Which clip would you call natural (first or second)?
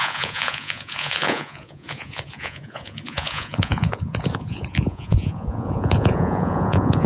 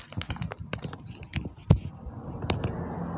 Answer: second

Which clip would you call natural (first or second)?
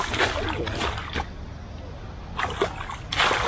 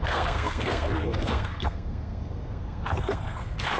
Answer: first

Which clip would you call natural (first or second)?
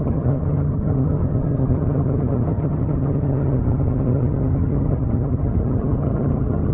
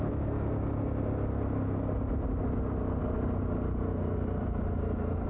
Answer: second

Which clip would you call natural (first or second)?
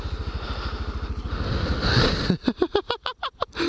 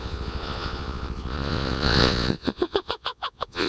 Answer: first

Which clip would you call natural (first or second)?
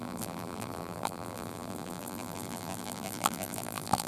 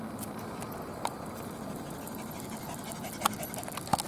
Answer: second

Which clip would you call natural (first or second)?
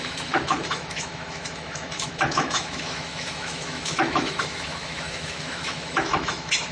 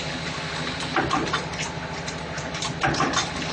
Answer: second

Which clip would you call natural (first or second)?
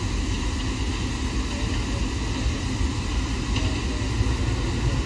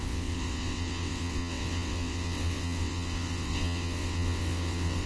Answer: first